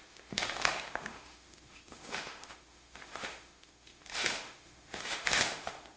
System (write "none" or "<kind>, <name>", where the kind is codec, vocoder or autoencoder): autoencoder, DAC-VAE